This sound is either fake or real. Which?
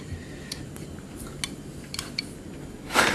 real